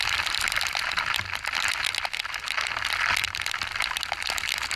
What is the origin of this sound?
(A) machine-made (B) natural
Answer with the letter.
B